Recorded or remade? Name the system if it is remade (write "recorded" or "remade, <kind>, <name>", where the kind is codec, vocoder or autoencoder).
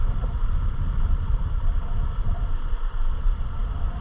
remade, vocoder, BigVGAN v2